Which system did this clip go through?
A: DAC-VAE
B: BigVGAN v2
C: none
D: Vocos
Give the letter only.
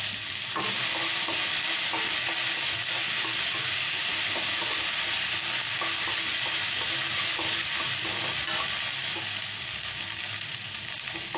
B